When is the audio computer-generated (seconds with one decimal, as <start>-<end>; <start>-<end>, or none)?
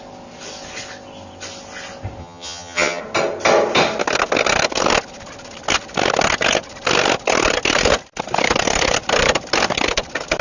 2.2-3.0